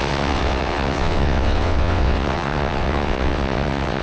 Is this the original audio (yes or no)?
no